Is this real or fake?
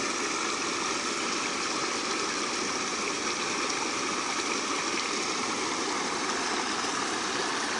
real